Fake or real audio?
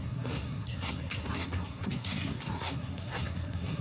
fake